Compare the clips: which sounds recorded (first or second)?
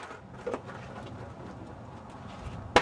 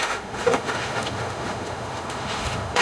first